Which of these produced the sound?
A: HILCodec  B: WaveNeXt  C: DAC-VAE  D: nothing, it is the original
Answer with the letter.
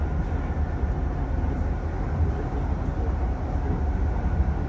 D